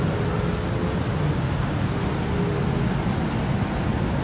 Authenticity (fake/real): real